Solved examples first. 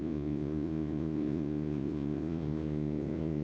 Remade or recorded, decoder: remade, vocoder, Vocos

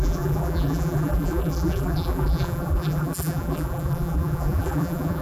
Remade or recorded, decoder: remade, vocoder, BigVGAN v2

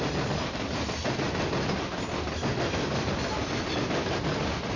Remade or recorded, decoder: recorded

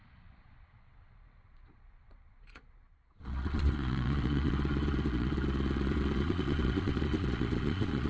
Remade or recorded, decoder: remade, vocoder, Vocos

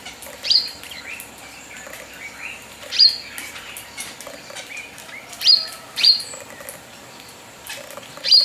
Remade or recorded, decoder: remade, vocoder, BigVGAN v2